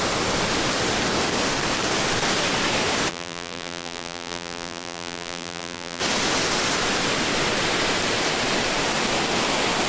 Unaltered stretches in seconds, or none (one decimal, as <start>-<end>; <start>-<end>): 0.0-3.1; 6.0-9.9

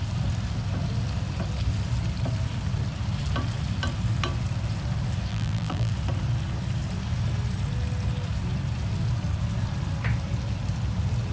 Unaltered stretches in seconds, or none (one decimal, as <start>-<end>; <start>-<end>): 0.0-5.3; 5.9-11.3

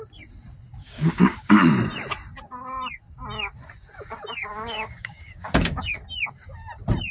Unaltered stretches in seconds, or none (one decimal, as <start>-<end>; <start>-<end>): 0.0-0.8; 1.7-4.5; 5.9-7.1

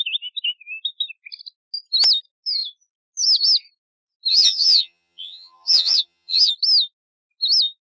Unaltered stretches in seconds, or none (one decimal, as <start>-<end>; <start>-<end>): 0.0-4.3; 6.5-7.9

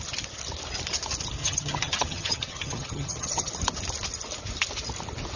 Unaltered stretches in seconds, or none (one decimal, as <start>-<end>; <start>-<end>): 0.0-1.4; 3.5-5.4